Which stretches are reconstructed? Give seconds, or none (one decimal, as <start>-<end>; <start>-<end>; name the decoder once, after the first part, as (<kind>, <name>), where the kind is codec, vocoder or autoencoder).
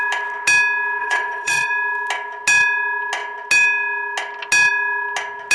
1.0-1.7 (vocoder, WaveNeXt)